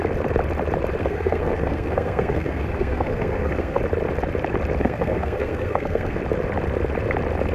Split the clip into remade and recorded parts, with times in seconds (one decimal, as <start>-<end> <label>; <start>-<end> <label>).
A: 0.0-1.0 recorded; 1.0-3.8 remade; 3.8-4.8 recorded; 4.8-6.2 remade; 6.2-7.5 recorded